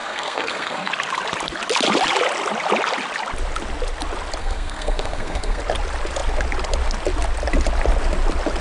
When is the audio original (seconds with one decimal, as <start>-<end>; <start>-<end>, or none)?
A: 0.9-4.4; 5.6-8.6